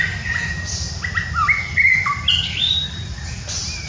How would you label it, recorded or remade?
recorded